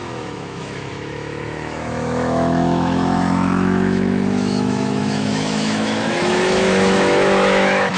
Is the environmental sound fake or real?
fake